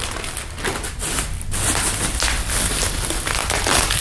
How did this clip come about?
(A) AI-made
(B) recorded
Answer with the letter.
B